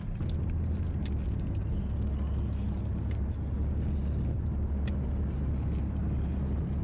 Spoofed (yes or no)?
no